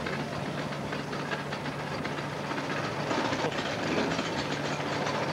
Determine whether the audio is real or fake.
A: real